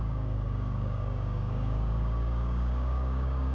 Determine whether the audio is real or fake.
fake